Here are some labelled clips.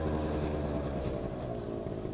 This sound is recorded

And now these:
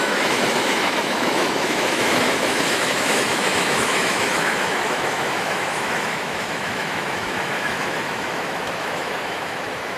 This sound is remade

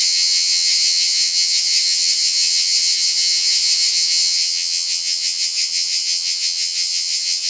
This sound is remade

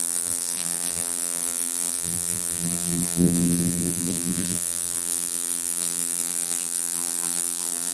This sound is remade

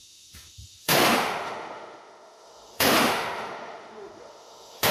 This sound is remade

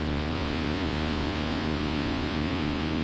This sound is remade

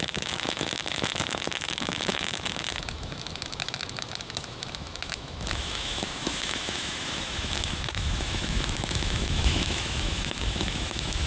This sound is remade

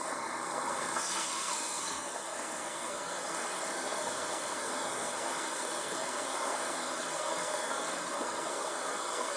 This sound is remade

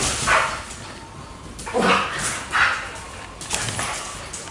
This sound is recorded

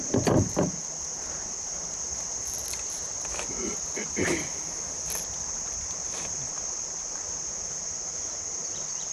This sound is recorded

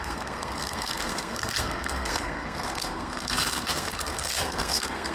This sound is remade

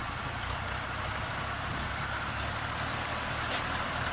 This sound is recorded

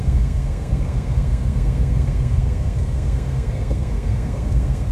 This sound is remade